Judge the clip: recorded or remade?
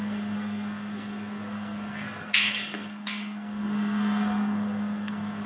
remade